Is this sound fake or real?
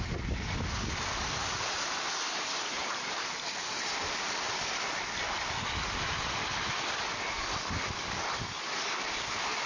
real